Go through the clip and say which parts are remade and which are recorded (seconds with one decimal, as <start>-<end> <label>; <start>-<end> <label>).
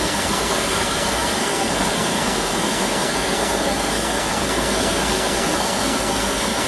0.0-6.7 remade